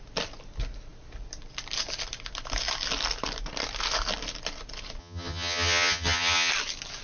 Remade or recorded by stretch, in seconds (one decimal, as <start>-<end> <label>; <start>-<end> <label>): 0.0-5.0 recorded; 5.0-6.5 remade; 6.5-7.0 recorded